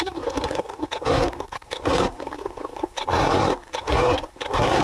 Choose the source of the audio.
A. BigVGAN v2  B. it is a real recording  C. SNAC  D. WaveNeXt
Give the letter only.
C